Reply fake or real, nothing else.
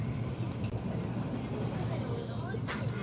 real